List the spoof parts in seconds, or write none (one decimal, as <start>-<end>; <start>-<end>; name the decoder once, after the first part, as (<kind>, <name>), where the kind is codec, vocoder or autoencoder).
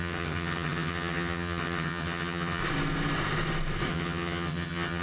0.0-2.6 (vocoder, HiFi-GAN); 3.9-5.0